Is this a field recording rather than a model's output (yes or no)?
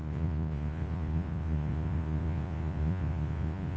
no